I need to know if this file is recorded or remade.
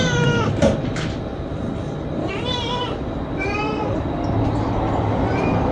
remade